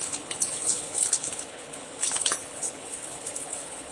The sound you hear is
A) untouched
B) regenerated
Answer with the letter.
B